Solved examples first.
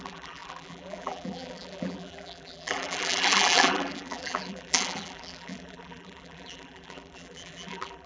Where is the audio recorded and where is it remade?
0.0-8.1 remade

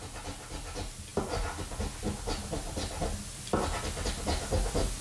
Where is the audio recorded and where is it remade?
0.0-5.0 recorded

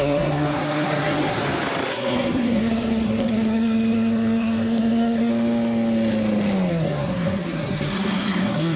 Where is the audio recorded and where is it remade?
0.0-1.4 remade; 1.4-1.9 recorded; 1.9-5.3 remade; 5.3-6.7 recorded; 6.7-8.8 remade

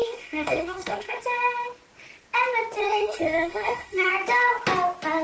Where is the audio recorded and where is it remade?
0.0-1.2 remade; 1.2-2.8 recorded; 2.8-4.1 remade; 4.1-5.2 recorded

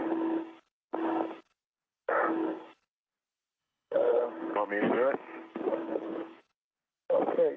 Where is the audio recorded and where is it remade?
0.0-3.6 recorded; 3.6-4.2 remade; 4.2-5.8 recorded; 5.8-6.4 remade; 6.4-7.6 recorded

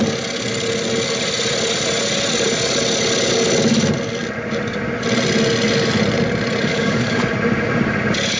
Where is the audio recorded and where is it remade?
0.0-6.7 recorded; 6.7-7.3 remade; 7.3-8.4 recorded

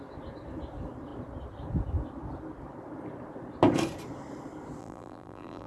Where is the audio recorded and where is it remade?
0.0-4.8 recorded; 4.8-5.7 remade

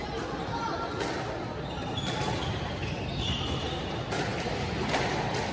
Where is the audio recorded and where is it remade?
0.0-5.5 recorded